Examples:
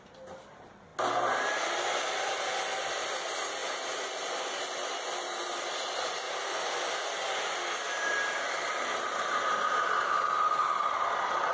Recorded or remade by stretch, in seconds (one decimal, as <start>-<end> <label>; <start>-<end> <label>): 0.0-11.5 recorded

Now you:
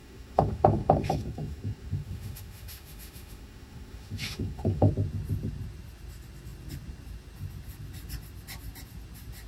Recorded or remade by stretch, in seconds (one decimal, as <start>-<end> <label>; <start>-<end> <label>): 0.0-4.9 remade; 4.9-9.5 recorded

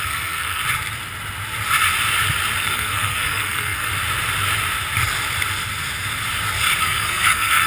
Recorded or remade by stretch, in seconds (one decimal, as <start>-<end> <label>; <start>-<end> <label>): 0.0-0.6 remade; 0.6-2.6 recorded; 2.6-3.9 remade; 3.9-6.8 recorded; 6.8-7.7 remade